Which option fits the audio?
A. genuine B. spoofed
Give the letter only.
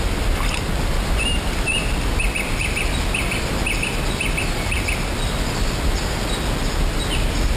A